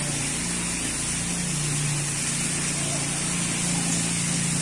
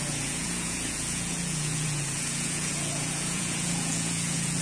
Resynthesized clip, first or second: second